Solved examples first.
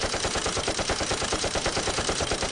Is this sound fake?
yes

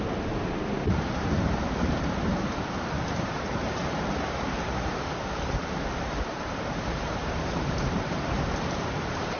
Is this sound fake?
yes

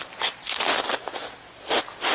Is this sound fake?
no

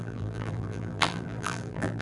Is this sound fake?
yes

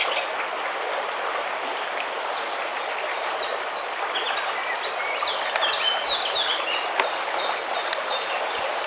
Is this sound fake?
no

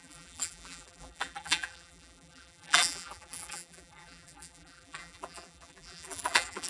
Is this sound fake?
yes